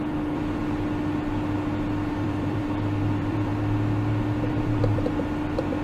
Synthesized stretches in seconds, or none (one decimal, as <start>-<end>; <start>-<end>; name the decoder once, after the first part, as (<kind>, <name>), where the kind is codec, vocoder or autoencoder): 0.0-0.6 (vocoder, BigVGAN v2); 1.9-3.5; 4.5-5.8